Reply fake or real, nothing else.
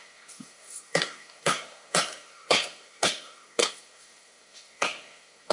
fake